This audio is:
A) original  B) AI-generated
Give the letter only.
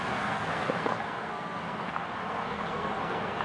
B